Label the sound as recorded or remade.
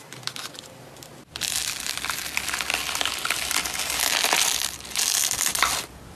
recorded